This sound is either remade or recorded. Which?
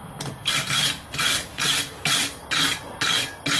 recorded